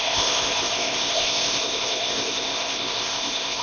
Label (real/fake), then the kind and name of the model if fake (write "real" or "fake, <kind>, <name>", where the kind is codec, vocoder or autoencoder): fake, codec, ZipCodec